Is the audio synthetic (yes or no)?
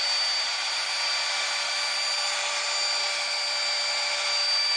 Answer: no